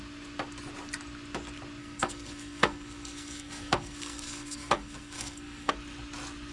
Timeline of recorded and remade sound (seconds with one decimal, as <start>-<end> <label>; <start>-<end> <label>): 0.0-1.8 recorded; 1.8-5.7 remade; 5.7-6.5 recorded